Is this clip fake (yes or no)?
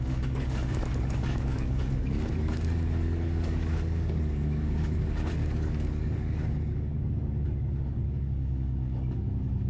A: yes